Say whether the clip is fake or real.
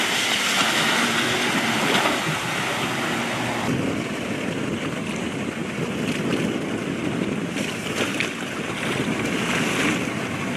real